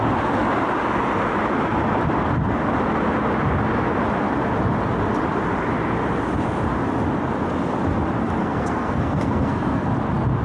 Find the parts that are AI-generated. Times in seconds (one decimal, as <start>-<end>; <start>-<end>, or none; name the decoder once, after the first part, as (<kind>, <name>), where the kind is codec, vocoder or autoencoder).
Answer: 8.4-9.9 (codec, SNAC)